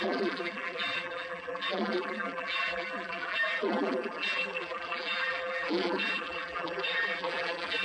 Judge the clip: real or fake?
fake